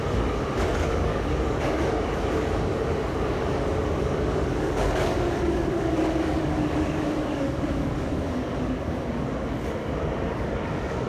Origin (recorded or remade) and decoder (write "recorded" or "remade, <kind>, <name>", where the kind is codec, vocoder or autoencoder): remade, codec, DAC